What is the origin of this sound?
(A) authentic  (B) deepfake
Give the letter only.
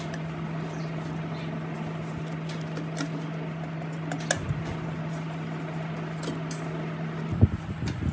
A